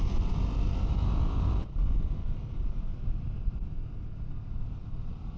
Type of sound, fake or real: fake